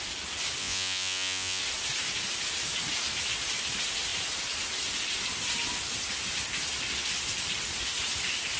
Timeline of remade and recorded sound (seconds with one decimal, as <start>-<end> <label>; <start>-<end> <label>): 0.0-0.6 recorded; 0.6-1.6 remade; 1.6-8.6 recorded